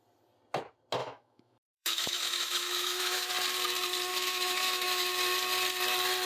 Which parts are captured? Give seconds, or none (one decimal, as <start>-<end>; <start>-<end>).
0.0-1.0; 3.3-4.1; 5.1-6.3